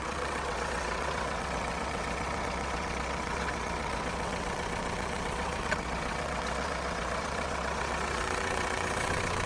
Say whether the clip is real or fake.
fake